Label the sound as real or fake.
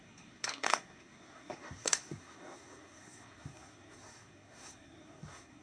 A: fake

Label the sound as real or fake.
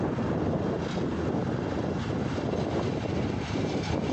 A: real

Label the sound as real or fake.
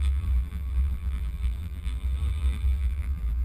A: fake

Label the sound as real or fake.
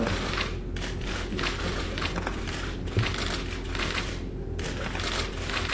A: real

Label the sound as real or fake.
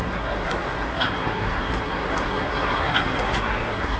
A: fake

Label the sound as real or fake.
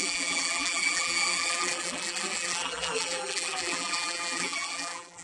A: fake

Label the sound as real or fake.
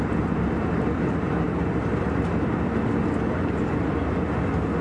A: fake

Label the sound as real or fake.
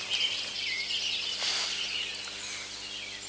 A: real